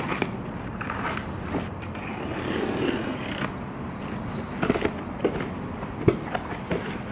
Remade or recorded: recorded